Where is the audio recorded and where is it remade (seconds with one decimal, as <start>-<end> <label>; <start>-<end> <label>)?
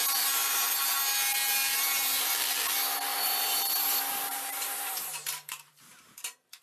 0.0-3.1 recorded; 3.1-6.6 remade